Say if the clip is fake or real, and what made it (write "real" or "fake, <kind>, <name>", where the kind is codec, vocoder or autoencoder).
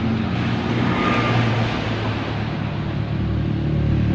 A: real